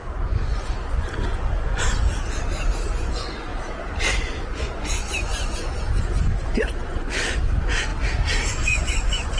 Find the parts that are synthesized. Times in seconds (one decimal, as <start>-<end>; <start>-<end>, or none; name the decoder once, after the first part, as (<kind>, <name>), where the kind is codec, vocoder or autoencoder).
0.0-1.9 (vocoder, Vocos); 2.9-3.5; 4.1-7.9; 8.5-9.4